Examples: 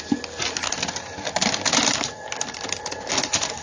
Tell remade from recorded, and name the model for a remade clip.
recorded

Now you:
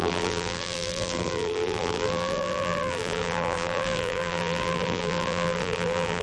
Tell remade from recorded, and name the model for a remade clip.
remade, vocoder, BigVGAN v2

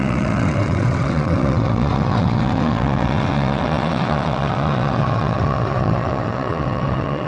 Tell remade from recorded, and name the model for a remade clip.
remade, vocoder, WaveNeXt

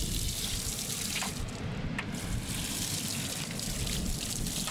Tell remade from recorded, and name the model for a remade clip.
recorded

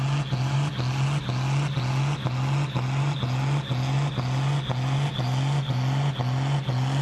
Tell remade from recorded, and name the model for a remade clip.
recorded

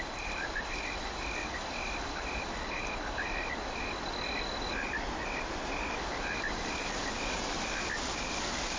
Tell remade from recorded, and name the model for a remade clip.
recorded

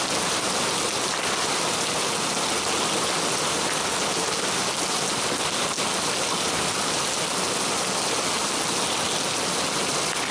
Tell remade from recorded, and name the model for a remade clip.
recorded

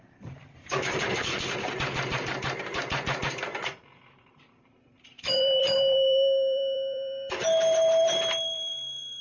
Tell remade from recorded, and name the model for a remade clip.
remade, vocoder, BigVGAN v2